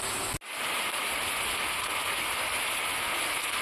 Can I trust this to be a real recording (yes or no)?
yes